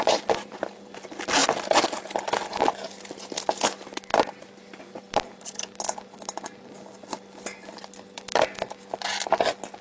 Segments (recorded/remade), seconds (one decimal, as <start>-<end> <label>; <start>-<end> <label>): 0.0-9.8 recorded

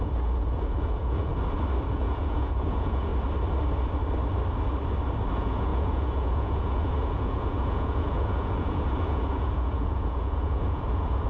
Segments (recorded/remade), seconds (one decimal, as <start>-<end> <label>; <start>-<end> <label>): 0.0-1.3 remade; 1.3-1.9 recorded; 1.9-3.1 remade; 3.1-5.3 recorded; 5.3-11.3 remade

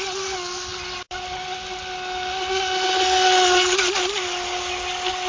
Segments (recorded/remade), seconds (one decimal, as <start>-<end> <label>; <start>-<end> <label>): 0.0-5.3 recorded